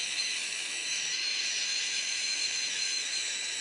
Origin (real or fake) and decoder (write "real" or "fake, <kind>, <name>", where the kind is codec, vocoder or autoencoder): fake, autoencoder, DAC-VAE